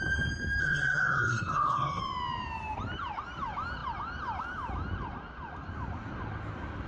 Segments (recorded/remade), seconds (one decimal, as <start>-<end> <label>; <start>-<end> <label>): 0.0-0.6 recorded; 0.6-2.0 remade; 2.0-6.9 recorded